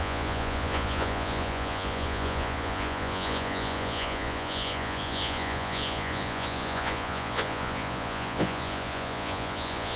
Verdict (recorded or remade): remade